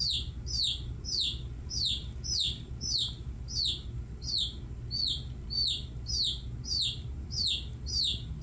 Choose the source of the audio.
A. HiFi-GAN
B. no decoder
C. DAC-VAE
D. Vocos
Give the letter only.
B